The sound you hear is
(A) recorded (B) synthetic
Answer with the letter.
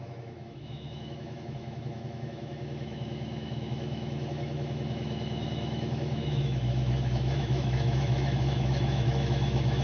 B